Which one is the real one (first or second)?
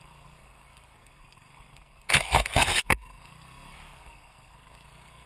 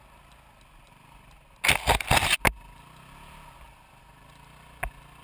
second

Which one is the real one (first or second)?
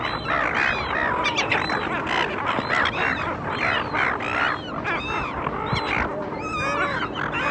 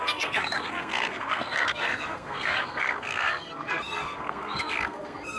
first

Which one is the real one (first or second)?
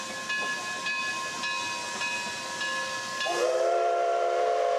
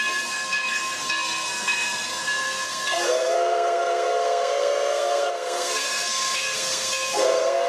first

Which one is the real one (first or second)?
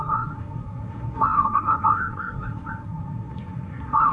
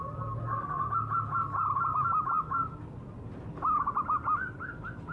second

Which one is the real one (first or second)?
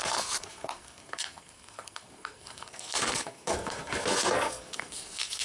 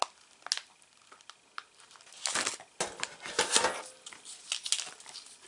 second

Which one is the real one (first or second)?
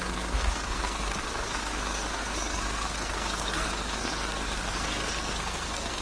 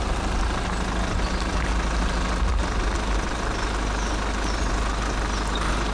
second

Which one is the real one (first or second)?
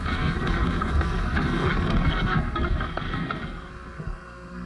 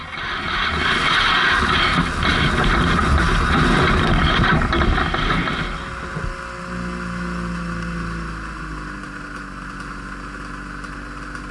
second